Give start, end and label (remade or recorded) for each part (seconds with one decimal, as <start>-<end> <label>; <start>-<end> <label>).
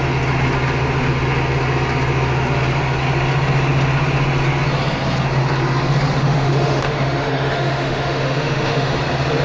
0.0-6.2 recorded; 6.2-9.0 remade; 9.0-9.4 recorded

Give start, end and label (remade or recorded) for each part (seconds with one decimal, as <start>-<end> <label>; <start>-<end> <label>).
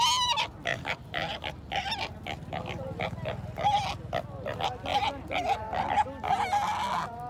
0.0-7.3 recorded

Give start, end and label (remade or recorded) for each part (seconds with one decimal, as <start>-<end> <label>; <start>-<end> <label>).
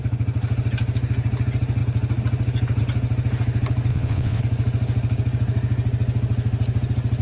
0.0-3.9 recorded; 3.9-4.4 remade; 4.4-7.2 recorded